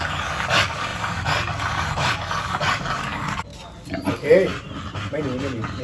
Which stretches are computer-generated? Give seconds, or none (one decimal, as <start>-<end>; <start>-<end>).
0.0-3.5; 4.1-4.5